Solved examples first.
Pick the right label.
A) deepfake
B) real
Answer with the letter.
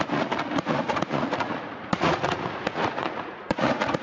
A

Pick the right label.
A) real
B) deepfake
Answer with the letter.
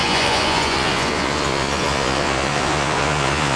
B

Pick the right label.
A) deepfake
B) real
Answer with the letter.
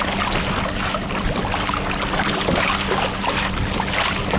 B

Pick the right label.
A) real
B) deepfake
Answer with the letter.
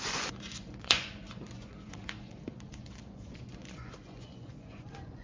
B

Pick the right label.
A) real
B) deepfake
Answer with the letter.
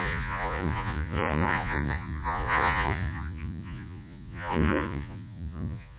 B